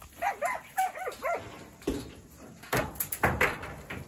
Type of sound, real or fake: real